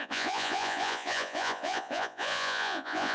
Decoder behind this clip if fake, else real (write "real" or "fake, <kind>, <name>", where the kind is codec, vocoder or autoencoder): fake, vocoder, Vocos